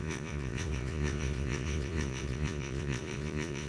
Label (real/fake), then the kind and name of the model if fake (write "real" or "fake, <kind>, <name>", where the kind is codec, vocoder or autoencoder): fake, vocoder, Vocos